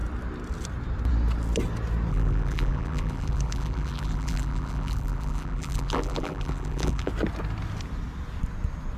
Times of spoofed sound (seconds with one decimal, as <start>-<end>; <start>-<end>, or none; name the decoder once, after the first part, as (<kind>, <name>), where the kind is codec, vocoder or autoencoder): 2.1-7.1 (vocoder, BigVGAN v2)